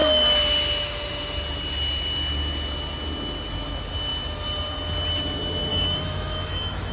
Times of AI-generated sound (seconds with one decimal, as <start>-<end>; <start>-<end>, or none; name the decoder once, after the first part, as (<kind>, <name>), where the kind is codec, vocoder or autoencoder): 5.7-6.9 (autoencoder, DAC-VAE)